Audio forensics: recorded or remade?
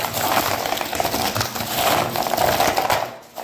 recorded